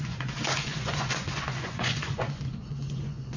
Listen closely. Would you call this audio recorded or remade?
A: remade